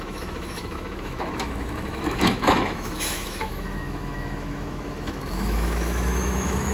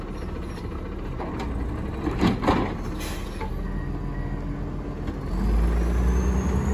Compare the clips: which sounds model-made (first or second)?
first